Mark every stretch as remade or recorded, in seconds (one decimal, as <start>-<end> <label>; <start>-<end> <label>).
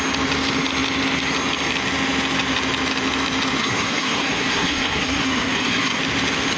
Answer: 0.0-3.6 recorded; 3.6-6.0 remade; 6.0-6.6 recorded